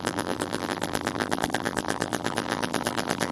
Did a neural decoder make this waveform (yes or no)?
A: yes